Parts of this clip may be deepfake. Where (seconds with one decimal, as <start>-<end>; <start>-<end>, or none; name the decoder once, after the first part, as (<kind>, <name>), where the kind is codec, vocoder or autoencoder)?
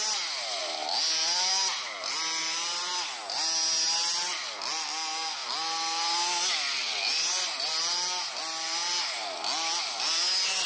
none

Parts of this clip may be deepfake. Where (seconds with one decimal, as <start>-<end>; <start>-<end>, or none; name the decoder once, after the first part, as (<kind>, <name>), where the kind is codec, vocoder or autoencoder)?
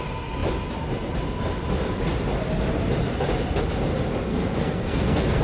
4.3-5.4 (codec, SNAC)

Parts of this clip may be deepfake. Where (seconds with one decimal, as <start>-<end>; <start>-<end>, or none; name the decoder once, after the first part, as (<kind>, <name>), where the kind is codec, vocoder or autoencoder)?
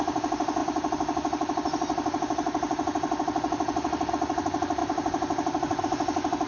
none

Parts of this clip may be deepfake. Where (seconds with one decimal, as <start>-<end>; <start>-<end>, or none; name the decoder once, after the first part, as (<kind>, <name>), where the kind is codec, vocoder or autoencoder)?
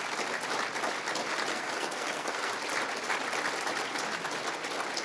1.5-2.5 (codec, SNAC)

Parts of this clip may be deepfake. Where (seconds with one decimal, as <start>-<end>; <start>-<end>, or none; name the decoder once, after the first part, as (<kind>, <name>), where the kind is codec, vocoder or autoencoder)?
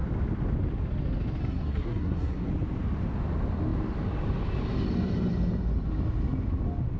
1.4-2.5 (codec, SNAC)